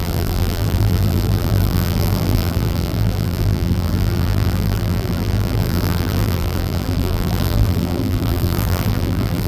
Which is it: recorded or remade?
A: remade